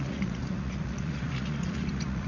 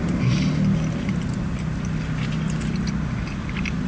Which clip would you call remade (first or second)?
first